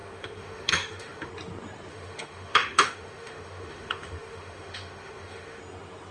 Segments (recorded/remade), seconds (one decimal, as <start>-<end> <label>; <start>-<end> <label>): 0.0-1.3 remade; 1.3-1.9 recorded; 1.9-5.6 remade; 5.6-6.1 recorded